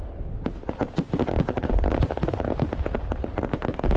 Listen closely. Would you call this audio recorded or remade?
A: recorded